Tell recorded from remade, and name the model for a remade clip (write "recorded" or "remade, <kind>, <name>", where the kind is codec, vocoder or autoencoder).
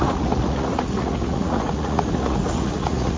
remade, vocoder, Vocos